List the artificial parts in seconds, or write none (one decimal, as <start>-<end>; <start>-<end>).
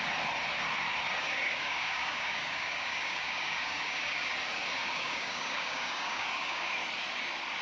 1.2-4.3; 4.8-6.7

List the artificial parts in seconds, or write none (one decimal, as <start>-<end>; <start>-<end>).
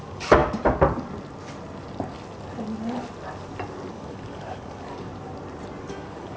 0.0-0.4; 3.9-5.1; 5.8-6.4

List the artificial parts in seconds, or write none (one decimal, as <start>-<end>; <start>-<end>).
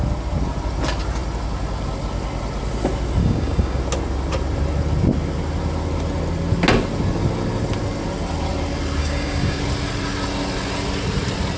3.2-3.8; 9.0-9.6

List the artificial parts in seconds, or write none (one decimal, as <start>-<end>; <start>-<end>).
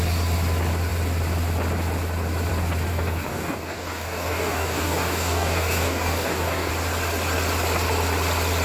2.9-6.7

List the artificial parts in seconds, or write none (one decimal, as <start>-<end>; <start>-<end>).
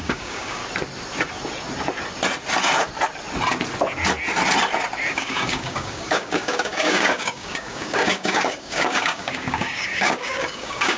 0.0-0.6; 5.1-11.0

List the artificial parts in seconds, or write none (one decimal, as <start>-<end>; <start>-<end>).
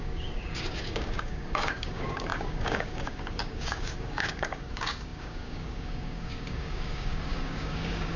0.0-8.2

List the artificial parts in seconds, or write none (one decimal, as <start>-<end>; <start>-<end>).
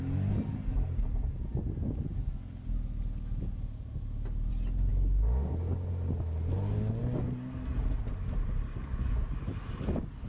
4.9-5.5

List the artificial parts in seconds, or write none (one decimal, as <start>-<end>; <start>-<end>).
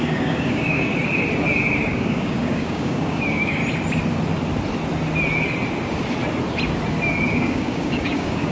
0.0-0.9; 1.8-3.6; 7.3-8.5